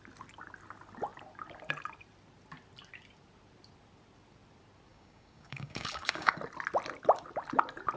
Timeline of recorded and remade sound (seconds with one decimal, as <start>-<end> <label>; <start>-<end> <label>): 0.0-4.9 recorded; 4.9-6.4 remade; 6.4-8.0 recorded